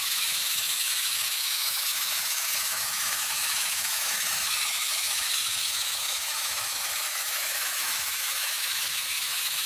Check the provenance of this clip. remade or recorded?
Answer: remade